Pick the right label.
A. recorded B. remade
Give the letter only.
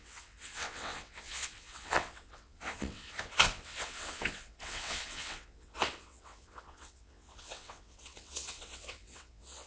B